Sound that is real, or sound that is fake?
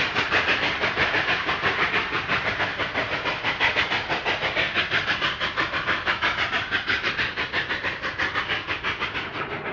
real